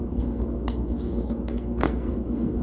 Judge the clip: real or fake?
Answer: fake